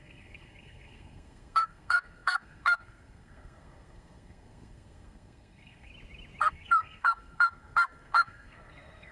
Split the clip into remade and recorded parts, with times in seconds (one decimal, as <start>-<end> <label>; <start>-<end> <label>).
0.0-5.9 remade; 5.9-6.5 recorded; 6.5-9.1 remade